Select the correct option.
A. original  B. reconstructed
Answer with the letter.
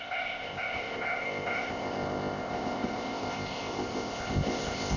B